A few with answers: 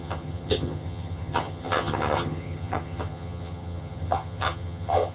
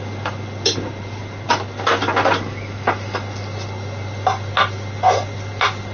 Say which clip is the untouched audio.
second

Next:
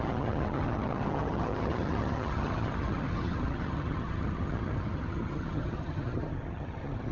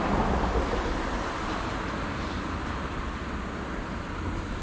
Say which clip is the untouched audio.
second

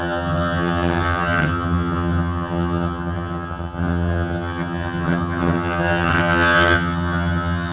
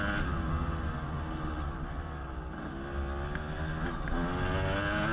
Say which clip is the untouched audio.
second